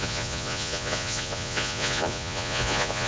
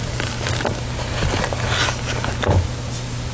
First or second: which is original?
second